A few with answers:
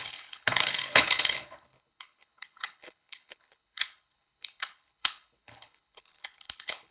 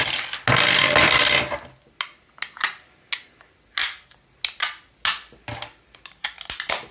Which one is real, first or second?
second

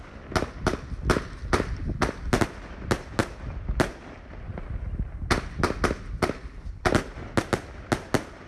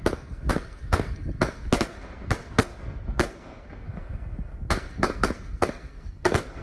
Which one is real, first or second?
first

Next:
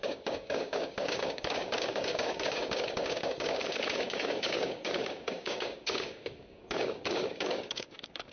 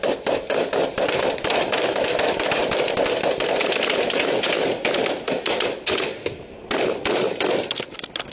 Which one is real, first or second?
second